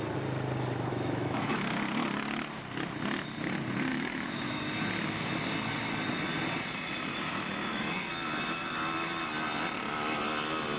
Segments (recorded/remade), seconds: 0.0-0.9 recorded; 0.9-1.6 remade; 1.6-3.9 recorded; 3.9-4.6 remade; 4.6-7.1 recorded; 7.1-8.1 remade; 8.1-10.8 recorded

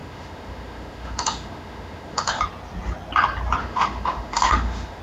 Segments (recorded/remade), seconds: 0.0-2.4 remade; 2.4-3.6 recorded; 3.6-5.0 remade

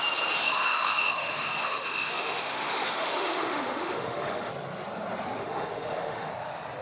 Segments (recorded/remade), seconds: 0.0-0.4 recorded; 0.4-4.5 remade; 4.5-5.4 recorded; 5.4-6.3 remade; 6.3-6.8 recorded

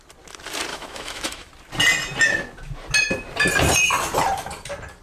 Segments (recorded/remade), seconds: 0.0-0.7 recorded; 0.7-1.5 remade; 1.5-5.0 recorded

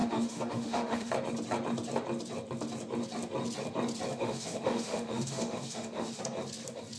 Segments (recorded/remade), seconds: 0.0-1.1 remade; 1.1-4.1 recorded; 4.1-6.2 remade; 6.2-7.0 recorded

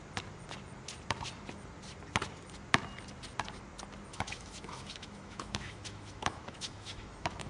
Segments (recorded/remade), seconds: 0.0-4.1 recorded; 4.1-7.5 remade

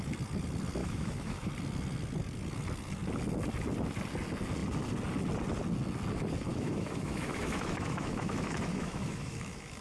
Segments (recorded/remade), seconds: 0.0-0.8 recorded; 0.8-1.5 remade; 1.5-6.5 recorded; 6.5-9.8 remade